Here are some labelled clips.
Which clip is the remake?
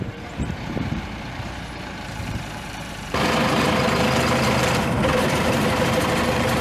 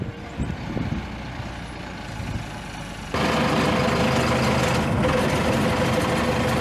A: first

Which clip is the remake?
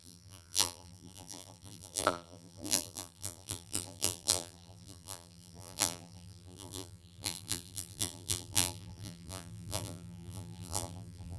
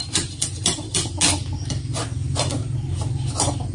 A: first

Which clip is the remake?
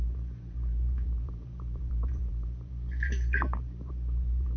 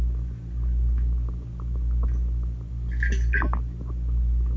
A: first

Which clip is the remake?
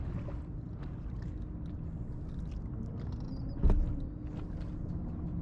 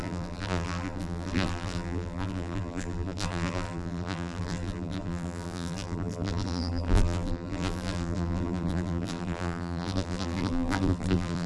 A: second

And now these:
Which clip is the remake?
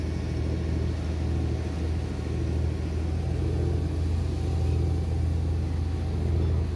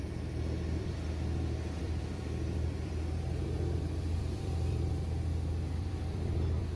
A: second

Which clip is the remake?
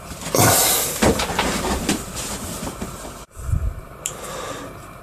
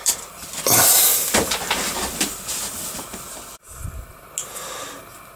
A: first